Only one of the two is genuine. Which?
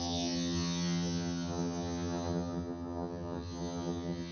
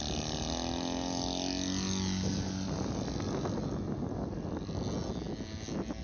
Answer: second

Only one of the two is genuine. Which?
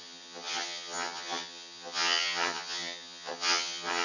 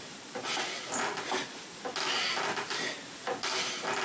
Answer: second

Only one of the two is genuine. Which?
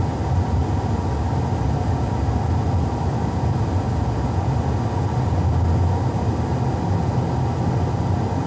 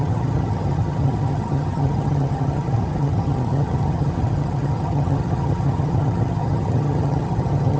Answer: first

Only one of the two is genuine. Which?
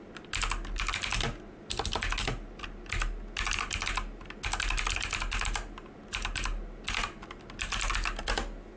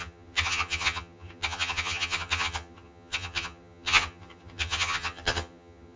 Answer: first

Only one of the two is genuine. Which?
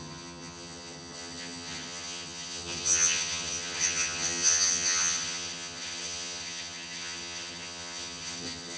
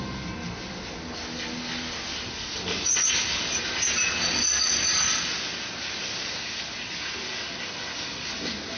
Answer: second